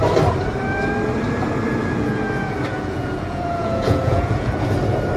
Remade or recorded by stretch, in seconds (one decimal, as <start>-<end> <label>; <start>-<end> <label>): 0.0-1.8 recorded; 1.8-4.5 remade; 4.5-5.2 recorded